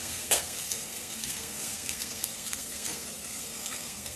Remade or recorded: remade